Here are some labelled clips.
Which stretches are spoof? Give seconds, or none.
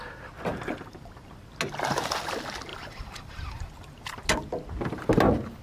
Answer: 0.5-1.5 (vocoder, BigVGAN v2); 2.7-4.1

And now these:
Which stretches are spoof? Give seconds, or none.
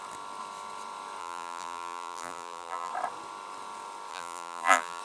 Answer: 1.2-2.9 (vocoder, BigVGAN v2); 4.1-5.0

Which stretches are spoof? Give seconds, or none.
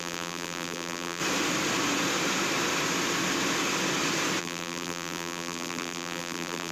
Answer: 0.0-1.2 (vocoder, BigVGAN v2); 4.4-6.7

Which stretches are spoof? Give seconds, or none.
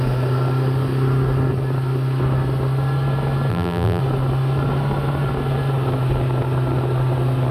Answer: 3.5-4.0 (vocoder, BigVGAN v2)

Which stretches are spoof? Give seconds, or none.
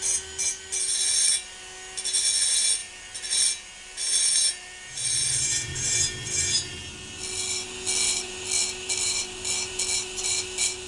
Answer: none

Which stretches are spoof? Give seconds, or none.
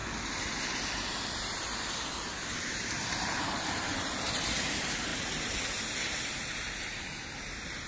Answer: 0.0-5.1 (vocoder, BigVGAN v2); 5.8-7.9